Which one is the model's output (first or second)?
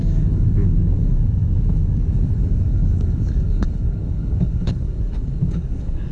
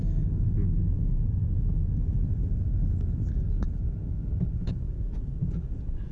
first